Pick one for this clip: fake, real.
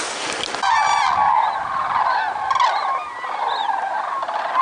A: real